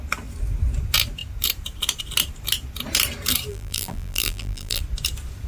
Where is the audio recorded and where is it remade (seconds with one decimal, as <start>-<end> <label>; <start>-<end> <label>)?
0.0-3.5 recorded; 3.5-4.8 remade; 4.8-5.5 recorded